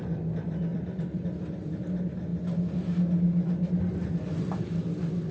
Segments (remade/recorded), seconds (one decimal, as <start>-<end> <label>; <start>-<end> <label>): 0.0-0.7 recorded; 0.7-1.8 remade; 1.8-5.3 recorded